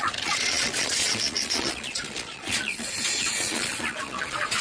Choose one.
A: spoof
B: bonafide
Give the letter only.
A